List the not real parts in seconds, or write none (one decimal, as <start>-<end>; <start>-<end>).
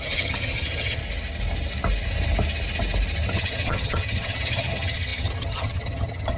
0.0-1.0; 3.3-6.4